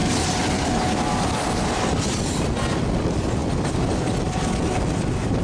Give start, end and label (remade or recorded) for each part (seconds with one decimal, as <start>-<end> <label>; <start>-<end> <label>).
0.0-5.4 recorded